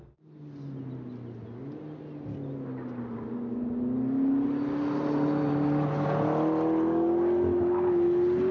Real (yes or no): yes